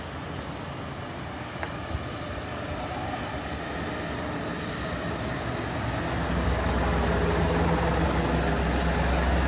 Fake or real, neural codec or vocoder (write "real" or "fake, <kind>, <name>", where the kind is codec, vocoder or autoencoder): real